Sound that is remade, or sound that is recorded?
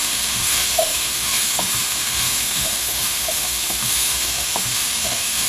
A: remade